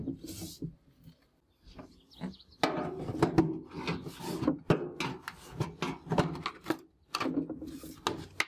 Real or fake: real